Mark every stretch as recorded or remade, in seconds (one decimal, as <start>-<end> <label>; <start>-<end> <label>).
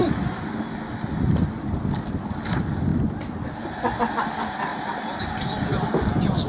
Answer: 0.0-6.5 recorded